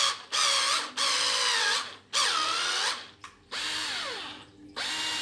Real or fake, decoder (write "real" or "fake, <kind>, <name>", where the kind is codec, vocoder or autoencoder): real